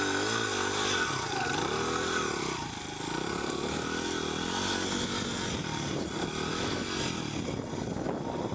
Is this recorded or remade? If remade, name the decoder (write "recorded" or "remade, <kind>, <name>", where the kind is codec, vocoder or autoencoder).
recorded